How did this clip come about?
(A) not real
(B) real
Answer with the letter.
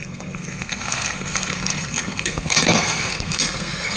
A